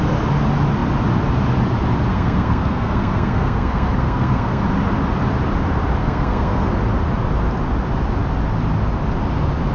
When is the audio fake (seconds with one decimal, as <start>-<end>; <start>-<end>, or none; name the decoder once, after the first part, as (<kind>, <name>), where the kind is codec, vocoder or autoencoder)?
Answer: 2.1-4.6 (codec, SNAC); 6.0-6.7